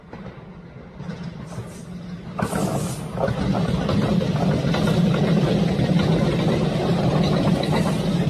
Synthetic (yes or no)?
no